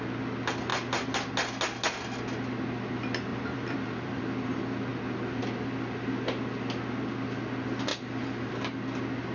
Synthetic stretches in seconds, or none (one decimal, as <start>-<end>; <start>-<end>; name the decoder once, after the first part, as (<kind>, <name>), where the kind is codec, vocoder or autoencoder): 3.3-4.2 (vocoder, BigVGAN v2)

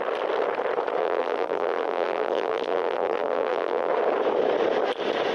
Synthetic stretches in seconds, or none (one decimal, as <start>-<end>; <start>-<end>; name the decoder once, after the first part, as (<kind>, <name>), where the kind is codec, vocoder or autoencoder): 1.0-3.9 (vocoder, BigVGAN v2)

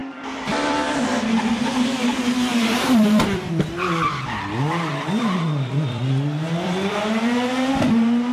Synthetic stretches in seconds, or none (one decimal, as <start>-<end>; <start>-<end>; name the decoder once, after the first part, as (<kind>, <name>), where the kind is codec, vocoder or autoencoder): 0.0-0.9 (vocoder, BigVGAN v2); 2.5-3.5; 4.9-7.9